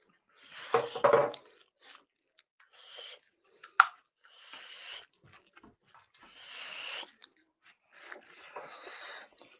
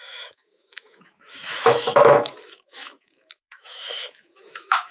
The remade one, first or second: second